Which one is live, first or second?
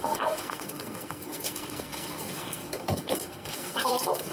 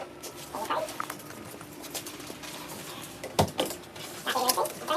second